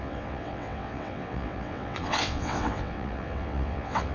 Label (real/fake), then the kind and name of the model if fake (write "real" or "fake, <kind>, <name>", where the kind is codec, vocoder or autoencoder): fake, vocoder, WaveNeXt